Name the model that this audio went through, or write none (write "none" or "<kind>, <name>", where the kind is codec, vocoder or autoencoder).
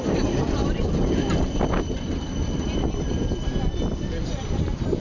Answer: none